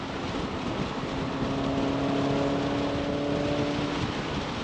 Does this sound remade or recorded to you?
recorded